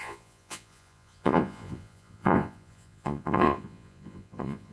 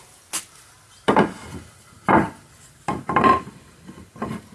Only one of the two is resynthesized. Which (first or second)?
first